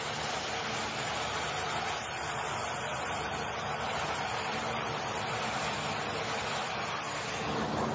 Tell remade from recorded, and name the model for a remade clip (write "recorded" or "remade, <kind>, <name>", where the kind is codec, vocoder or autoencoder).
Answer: recorded